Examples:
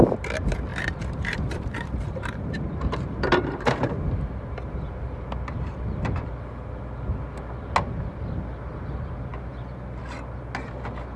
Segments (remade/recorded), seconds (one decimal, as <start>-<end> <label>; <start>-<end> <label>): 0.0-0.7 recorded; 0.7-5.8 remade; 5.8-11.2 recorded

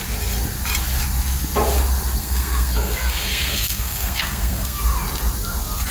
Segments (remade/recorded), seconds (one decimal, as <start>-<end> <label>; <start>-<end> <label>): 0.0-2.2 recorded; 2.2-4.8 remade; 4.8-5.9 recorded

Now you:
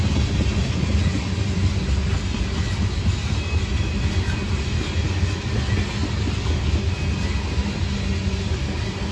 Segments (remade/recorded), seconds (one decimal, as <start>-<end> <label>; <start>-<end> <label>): 0.0-9.1 recorded

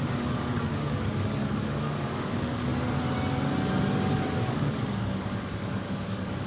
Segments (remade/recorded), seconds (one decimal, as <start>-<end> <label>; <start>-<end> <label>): 0.0-2.7 remade; 2.7-4.0 recorded; 4.0-6.5 remade